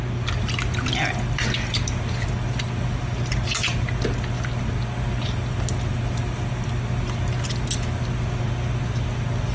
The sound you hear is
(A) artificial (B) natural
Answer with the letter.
B